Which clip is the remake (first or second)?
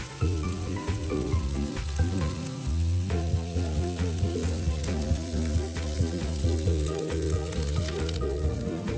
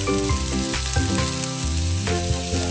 first